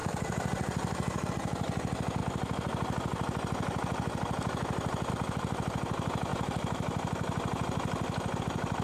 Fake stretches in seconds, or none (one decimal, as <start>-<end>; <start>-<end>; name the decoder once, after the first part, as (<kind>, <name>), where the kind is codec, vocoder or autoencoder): 0.0-1.3 (vocoder, BigVGAN v2)